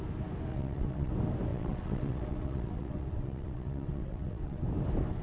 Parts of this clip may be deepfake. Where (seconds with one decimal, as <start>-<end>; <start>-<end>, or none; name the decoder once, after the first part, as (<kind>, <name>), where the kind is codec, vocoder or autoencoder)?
0.5-1.1 (vocoder, WaveNeXt); 1.5-4.6